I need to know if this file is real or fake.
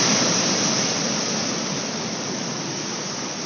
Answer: real